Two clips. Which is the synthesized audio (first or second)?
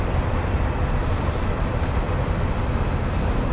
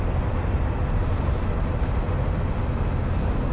first